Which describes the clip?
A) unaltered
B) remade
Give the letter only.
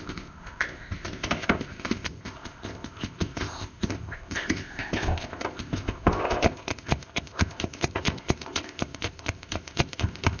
B